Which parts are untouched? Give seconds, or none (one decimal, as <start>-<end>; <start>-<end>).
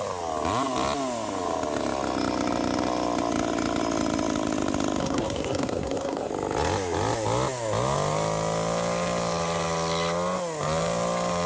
0.0-5.0; 6.3-11.5